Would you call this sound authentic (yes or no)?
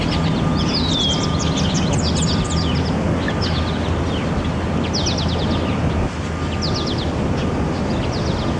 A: yes